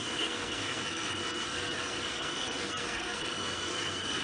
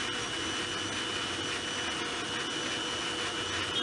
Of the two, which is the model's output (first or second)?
first